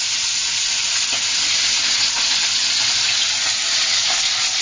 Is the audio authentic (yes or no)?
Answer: yes